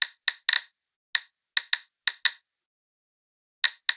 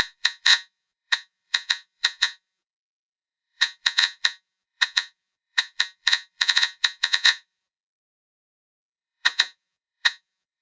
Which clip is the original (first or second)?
first